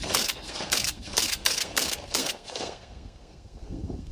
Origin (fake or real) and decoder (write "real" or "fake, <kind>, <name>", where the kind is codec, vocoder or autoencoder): fake, codec, SNAC